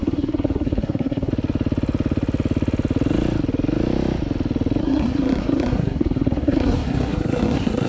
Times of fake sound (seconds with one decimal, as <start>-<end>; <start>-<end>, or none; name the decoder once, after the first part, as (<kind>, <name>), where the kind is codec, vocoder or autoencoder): 0.0-1.3 (codec, SNAC); 4.8-7.9